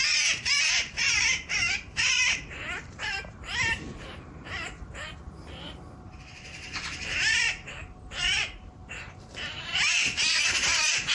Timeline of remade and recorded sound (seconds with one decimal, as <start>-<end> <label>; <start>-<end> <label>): 0.0-11.1 remade